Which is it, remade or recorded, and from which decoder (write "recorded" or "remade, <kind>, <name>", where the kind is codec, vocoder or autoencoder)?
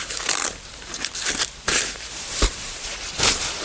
remade, vocoder, BigVGAN v2